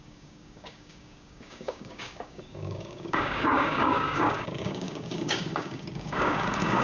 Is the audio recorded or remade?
remade